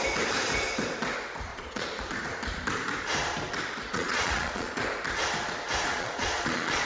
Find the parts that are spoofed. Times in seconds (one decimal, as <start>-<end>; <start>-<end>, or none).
1.5-2.0; 3.9-4.8; 5.9-6.9